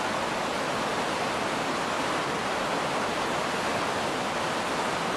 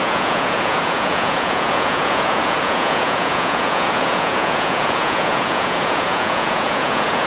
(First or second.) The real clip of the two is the first